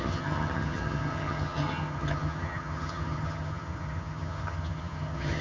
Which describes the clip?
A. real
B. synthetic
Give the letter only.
B